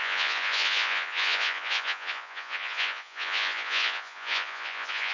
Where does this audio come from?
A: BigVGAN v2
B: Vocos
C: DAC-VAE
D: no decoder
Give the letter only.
B